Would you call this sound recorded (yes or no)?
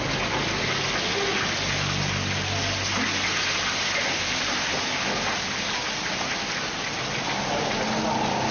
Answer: yes